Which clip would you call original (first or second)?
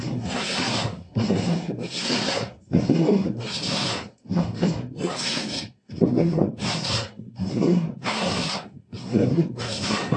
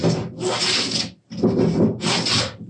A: second